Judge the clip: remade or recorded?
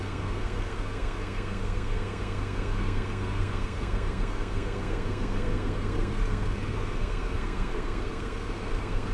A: remade